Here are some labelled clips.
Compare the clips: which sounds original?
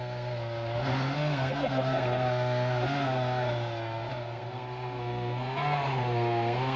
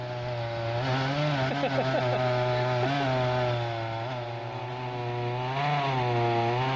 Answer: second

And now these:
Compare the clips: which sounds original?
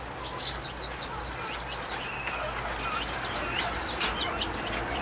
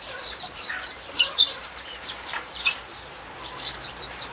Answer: first